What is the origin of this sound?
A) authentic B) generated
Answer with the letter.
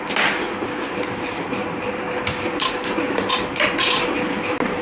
A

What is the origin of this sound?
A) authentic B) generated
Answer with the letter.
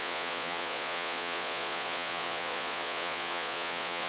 B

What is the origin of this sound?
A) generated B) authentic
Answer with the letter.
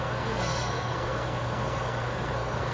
A